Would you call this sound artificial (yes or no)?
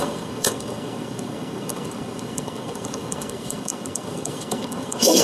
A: yes